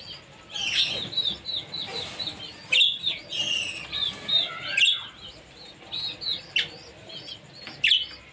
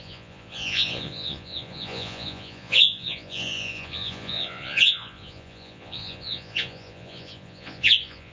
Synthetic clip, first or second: second